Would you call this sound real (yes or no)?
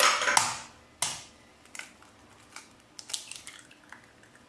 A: yes